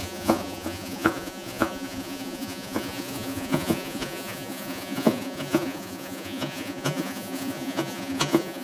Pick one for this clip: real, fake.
fake